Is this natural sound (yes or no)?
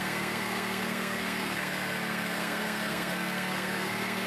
no